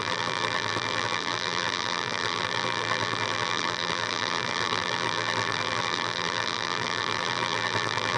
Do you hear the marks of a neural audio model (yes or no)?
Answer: yes